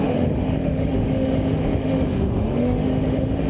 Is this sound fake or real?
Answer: fake